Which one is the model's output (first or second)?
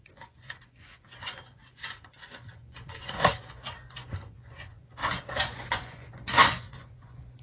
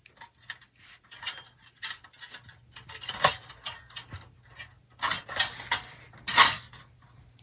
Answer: first